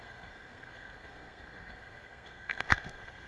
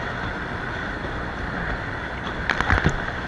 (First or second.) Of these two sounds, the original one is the second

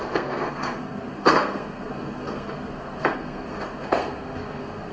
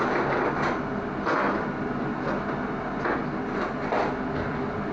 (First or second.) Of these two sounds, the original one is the second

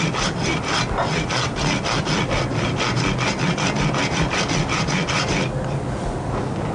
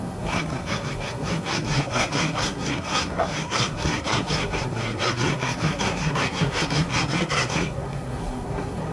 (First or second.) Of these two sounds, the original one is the first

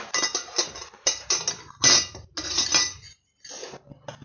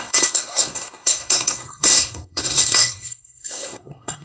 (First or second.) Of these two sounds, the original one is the first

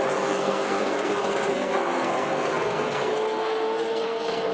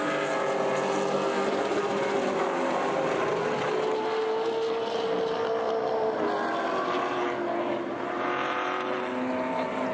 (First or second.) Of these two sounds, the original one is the second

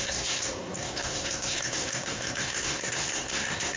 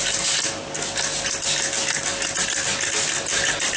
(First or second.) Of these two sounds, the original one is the second